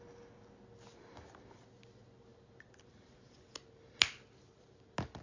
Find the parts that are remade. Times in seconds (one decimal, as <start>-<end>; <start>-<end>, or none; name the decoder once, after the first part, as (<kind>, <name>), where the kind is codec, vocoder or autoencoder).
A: none